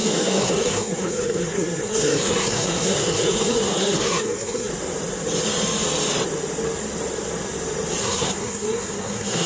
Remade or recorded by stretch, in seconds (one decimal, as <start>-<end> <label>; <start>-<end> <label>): 0.0-4.7 remade; 4.7-8.0 recorded; 8.0-9.5 remade